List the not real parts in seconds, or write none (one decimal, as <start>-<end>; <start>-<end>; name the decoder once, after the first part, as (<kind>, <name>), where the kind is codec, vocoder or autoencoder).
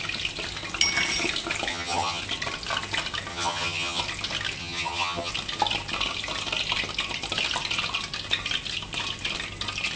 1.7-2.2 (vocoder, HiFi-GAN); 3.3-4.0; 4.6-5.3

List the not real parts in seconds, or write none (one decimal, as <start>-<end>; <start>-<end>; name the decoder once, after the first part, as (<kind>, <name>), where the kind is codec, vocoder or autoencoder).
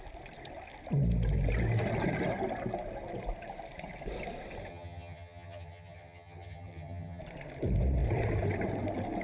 4.7-7.2 (vocoder, HiFi-GAN)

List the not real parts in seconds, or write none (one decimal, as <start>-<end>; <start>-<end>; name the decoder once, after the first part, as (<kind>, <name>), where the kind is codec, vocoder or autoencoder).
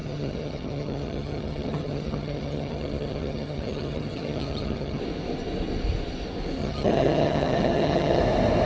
0.0-5.0 (vocoder, HiFi-GAN); 6.6-8.2